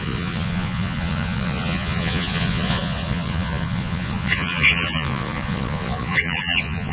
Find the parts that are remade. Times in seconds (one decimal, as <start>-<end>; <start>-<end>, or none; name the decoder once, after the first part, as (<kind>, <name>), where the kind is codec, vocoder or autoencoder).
0.0-6.9 (vocoder, Vocos)